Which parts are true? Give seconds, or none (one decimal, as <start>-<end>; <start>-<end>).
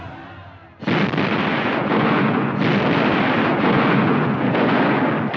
0.0-1.5; 2.6-3.5; 5.0-5.4